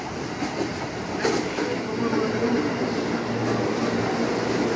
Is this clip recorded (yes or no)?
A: yes